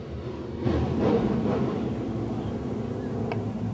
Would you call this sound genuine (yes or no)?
yes